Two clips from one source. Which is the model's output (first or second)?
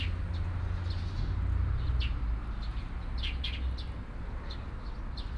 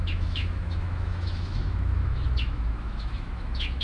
second